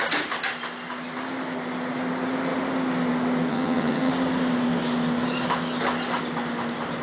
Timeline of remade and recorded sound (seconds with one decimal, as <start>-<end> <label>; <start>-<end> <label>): 0.0-3.5 recorded; 3.5-4.1 remade; 4.1-7.0 recorded